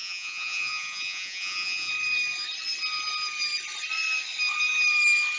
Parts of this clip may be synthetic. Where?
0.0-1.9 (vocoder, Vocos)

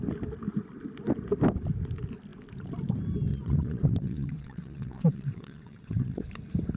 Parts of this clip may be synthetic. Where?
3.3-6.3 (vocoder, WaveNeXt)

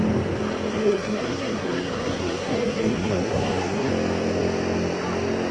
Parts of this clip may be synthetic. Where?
0.7-3.9 (codec, SNAC)

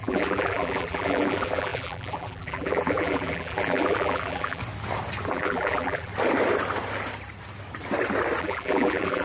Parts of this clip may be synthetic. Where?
0.0-4.6 (vocoder, BigVGAN v2); 5.3-6.1; 8.4-9.2

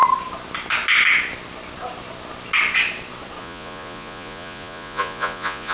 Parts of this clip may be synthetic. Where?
3.4-5.7 (vocoder, Vocos)